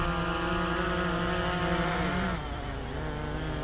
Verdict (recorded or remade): recorded